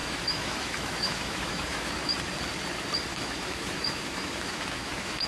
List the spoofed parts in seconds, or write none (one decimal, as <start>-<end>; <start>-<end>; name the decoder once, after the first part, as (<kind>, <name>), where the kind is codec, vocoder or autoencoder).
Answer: 0.0-1.9 (autoencoder, DAC-VAE); 3.1-5.3